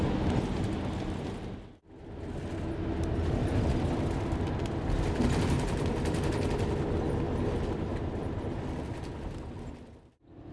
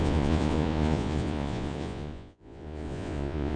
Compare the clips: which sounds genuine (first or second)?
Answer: first